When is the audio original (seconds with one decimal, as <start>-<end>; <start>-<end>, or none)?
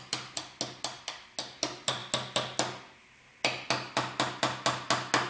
0.0-5.3